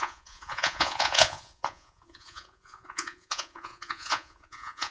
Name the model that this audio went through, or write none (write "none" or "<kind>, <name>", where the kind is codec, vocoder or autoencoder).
vocoder, Vocos